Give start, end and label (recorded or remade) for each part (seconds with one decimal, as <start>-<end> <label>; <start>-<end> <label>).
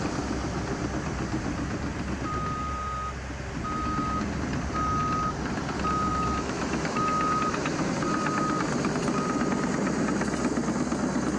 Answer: 0.0-6.1 recorded; 6.1-7.4 remade; 7.4-11.4 recorded